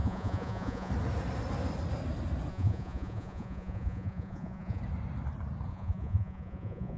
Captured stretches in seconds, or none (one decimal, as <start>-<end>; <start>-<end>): 0.9-2.5; 4.8-5.7